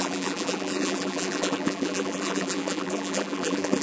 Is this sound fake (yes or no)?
yes